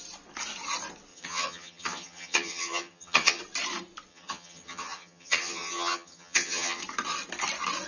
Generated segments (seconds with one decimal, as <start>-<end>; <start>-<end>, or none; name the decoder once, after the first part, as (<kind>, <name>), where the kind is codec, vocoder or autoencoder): 1.1-3.4 (vocoder, HiFi-GAN); 4.1-6.8